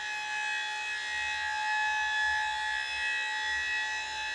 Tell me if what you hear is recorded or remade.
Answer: recorded